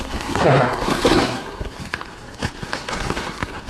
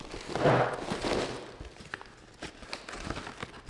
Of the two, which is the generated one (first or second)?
first